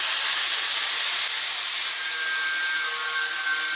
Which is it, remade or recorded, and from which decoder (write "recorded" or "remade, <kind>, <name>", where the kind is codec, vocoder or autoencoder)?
recorded